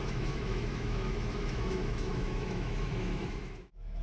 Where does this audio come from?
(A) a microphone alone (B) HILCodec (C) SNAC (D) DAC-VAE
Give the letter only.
D